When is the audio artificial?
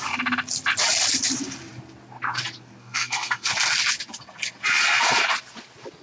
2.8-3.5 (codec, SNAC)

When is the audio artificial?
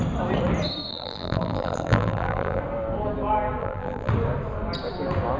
0.9-2.6 (vocoder, BigVGAN v2); 3.6-4.1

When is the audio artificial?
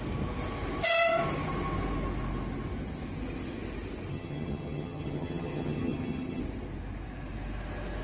4.1-6.4 (vocoder, HiFi-GAN)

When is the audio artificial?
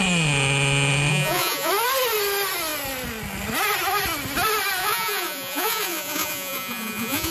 1.1-1.7 (vocoder, Vocos); 4.8-7.3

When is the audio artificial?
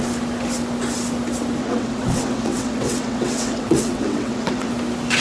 1.6-4.7 (vocoder, WaveNeXt)